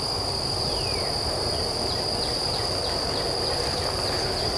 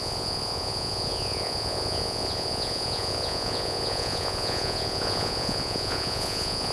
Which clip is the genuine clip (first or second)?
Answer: first